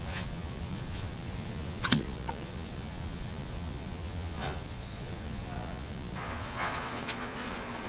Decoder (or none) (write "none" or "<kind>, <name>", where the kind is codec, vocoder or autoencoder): vocoder, Vocos